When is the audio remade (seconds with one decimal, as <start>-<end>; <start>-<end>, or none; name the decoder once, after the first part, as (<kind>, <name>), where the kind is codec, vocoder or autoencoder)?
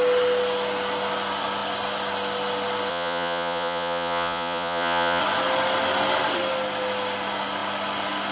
2.9-5.2 (vocoder, Vocos)